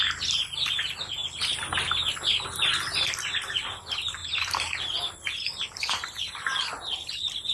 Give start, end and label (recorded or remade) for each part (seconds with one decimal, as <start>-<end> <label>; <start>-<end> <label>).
0.0-4.2 recorded; 4.2-7.1 remade; 7.1-7.5 recorded